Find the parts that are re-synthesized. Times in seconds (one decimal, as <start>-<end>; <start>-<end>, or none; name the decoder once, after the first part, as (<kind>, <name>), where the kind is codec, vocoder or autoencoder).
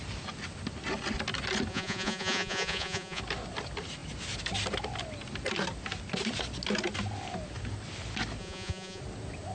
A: 1.7-3.2 (vocoder, Vocos); 8.4-9.0